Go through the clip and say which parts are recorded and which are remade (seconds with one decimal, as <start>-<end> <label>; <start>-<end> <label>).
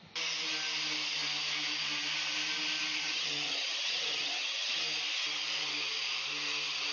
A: 0.0-3.0 recorded; 3.0-4.8 remade; 4.8-6.9 recorded